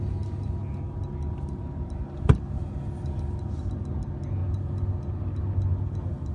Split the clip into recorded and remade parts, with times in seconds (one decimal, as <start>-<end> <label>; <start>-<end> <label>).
0.0-6.3 recorded